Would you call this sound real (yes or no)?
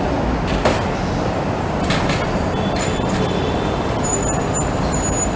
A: yes